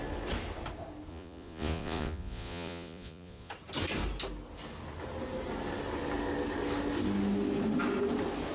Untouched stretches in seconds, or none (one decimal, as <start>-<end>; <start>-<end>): 0.0-1.1; 3.5-8.5